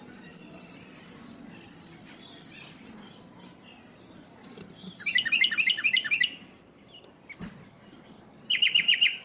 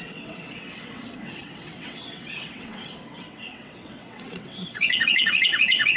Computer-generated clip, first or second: second